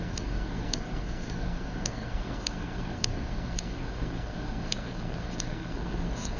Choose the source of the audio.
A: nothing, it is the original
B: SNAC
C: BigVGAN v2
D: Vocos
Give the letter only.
B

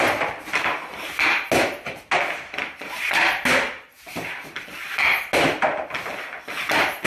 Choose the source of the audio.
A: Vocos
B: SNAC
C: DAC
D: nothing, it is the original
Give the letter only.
D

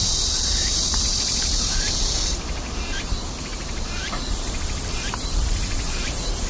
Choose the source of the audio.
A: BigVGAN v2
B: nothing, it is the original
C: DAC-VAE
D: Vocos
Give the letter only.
A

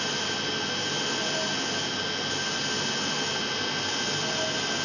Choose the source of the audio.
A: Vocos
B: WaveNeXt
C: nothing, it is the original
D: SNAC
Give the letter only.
C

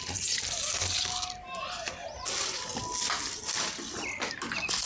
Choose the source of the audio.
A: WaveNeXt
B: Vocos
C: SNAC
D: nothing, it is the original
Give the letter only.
D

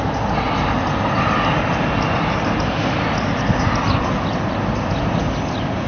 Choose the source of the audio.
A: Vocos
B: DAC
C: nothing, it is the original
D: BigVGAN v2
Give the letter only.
C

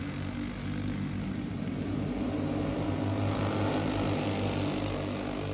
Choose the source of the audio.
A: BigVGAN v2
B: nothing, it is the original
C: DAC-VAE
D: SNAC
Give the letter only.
B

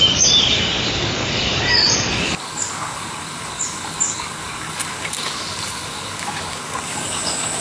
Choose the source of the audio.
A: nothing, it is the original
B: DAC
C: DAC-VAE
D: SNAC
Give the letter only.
B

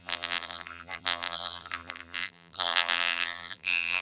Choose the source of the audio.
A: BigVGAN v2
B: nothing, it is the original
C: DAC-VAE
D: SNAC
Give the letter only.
A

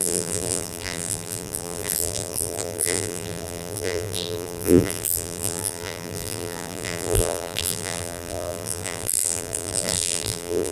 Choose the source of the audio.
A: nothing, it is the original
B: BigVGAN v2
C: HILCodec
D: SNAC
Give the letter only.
B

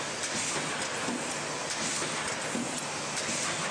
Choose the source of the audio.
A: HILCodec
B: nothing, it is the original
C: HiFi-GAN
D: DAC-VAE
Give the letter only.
B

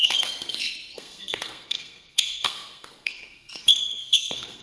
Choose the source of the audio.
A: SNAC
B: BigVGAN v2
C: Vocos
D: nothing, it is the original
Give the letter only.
A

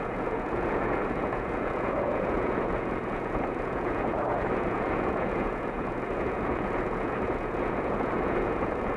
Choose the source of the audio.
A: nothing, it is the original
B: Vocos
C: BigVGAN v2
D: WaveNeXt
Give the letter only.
B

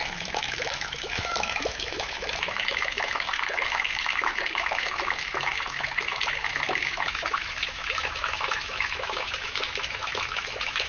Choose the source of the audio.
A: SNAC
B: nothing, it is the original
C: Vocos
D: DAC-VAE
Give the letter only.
D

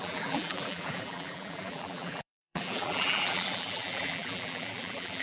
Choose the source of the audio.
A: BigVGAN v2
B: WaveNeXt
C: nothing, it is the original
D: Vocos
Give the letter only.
A